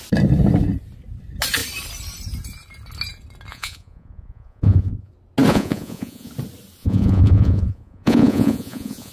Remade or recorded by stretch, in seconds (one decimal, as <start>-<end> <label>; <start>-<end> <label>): 0.0-3.5 recorded; 3.5-5.1 remade; 5.1-5.5 recorded; 5.5-6.3 remade; 6.3-6.8 recorded; 6.8-9.1 remade